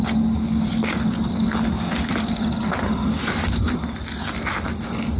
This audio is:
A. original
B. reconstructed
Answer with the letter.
A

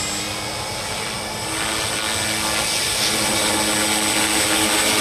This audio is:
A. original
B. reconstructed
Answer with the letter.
A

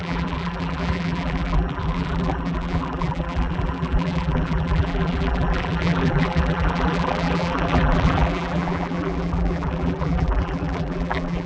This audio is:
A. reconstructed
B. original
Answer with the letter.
A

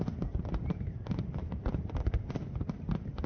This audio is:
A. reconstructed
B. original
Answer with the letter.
A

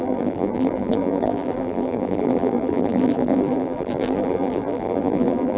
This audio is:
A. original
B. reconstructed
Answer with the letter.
B